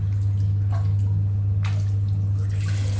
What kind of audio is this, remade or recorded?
recorded